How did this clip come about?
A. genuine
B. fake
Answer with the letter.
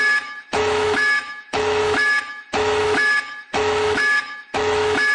B